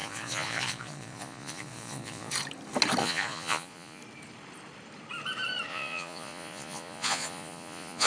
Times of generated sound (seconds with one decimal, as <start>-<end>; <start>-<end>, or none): 0.0-2.3; 3.0-4.0; 5.7-8.1